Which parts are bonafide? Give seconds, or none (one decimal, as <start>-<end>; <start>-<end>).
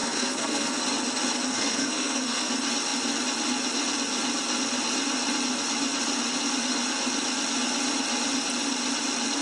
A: 0.8-1.5; 2.5-9.4